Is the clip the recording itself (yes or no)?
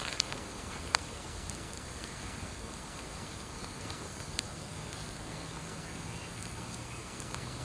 no